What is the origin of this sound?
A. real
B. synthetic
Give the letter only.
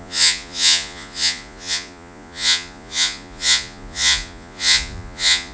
B